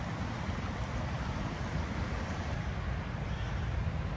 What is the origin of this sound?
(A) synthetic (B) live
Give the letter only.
B